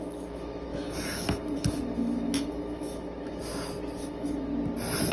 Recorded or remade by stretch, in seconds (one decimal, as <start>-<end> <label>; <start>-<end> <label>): 0.0-3.5 remade; 3.5-4.1 recorded; 4.1-4.5 remade; 4.5-5.1 recorded

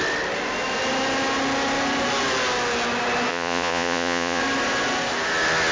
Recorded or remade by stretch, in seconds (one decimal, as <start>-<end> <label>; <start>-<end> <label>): 0.0-3.3 recorded; 3.3-4.4 remade; 4.4-5.7 recorded

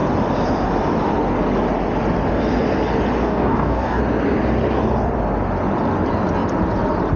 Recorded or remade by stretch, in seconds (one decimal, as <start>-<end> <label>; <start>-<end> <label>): 0.0-3.2 recorded; 3.2-4.0 remade; 4.0-7.2 recorded

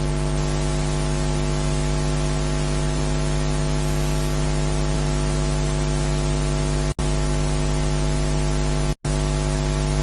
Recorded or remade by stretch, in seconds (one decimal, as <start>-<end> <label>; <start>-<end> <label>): 0.0-10.0 recorded

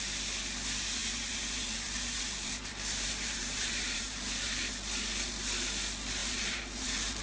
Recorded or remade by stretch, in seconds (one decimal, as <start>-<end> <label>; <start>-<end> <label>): 0.0-1.0 recorded; 1.0-4.6 remade; 4.6-6.2 recorded; 6.2-7.2 remade

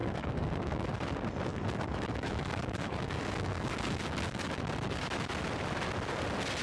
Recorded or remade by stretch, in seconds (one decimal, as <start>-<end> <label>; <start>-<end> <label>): 0.0-0.9 remade; 0.9-1.5 recorded; 1.5-4.6 remade; 4.6-6.6 recorded